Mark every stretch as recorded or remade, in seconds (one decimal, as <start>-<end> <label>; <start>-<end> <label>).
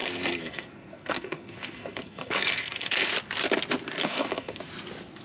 0.0-3.1 remade; 3.1-4.0 recorded; 4.0-4.6 remade; 4.6-5.2 recorded